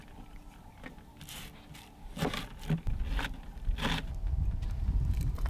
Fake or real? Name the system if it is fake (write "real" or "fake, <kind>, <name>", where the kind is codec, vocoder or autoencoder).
real